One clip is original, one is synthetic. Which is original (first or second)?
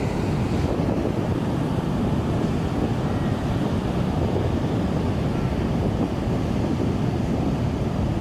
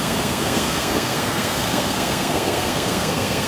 first